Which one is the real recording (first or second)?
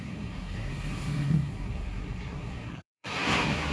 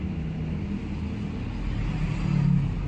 second